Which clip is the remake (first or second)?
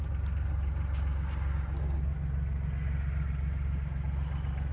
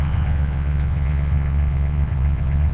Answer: second